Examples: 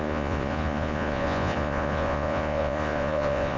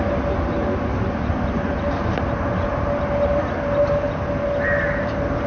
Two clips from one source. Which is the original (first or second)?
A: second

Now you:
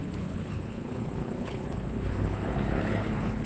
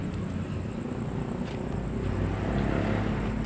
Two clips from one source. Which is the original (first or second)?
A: second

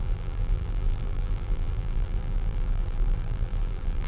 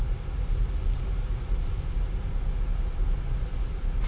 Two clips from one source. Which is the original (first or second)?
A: second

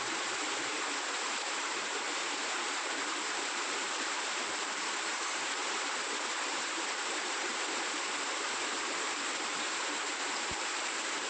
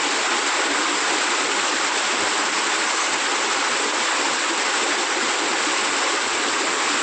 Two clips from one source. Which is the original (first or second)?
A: second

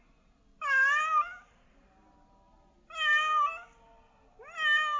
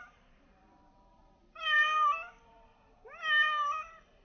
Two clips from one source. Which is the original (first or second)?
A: first